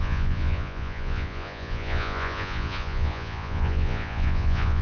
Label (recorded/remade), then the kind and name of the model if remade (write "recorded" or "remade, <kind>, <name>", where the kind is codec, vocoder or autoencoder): remade, vocoder, Vocos